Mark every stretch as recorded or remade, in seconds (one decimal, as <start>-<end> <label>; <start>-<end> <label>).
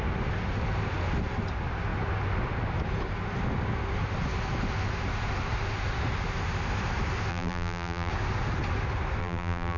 0.0-7.3 recorded; 7.3-8.1 remade; 8.1-9.2 recorded; 9.2-9.8 remade